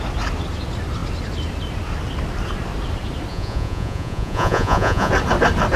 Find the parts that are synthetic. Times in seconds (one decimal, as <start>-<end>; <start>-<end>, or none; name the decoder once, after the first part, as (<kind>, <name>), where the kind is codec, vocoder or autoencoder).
3.3-5.1 (vocoder, Vocos)